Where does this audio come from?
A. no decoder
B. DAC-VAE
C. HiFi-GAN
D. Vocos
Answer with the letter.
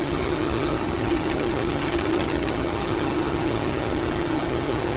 C